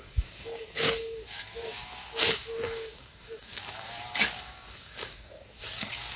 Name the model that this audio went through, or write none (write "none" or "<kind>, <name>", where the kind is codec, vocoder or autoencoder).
codec, DAC